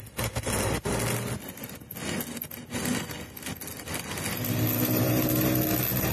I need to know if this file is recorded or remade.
recorded